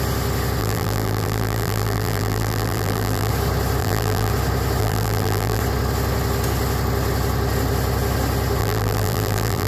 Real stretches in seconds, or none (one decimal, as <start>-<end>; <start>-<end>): 0.0-0.6; 3.3-3.8; 4.3-4.8; 5.6-8.6